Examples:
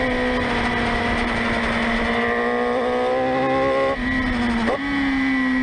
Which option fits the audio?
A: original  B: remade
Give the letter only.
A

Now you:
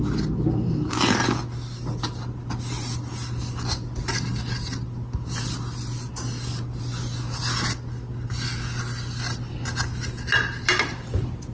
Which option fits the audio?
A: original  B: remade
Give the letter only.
A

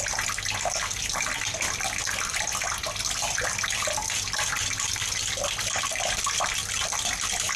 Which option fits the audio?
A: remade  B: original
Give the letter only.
B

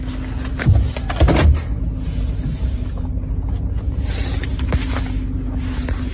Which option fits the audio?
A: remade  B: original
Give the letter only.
B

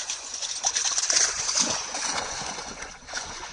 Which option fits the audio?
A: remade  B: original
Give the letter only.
A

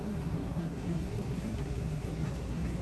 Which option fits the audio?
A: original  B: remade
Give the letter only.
B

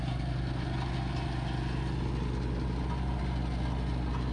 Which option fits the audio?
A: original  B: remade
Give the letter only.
A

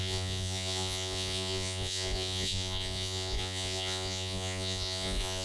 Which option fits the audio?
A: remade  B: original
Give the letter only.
A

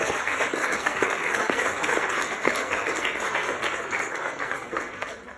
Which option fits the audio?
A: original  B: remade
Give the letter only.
B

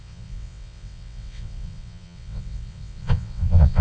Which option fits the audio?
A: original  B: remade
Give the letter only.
B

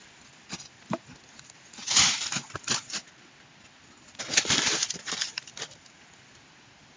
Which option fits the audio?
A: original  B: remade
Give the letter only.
A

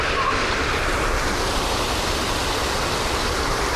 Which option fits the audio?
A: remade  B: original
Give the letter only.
A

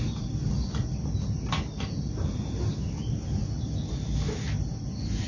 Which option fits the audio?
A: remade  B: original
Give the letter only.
B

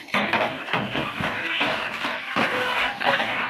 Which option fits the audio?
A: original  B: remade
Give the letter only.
B